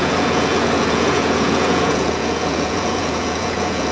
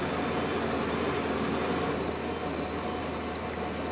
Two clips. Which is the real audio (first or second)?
second